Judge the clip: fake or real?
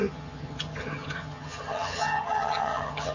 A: fake